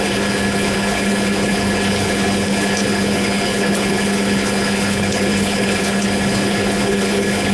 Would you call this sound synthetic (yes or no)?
yes